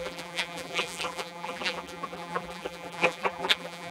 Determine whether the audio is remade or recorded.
remade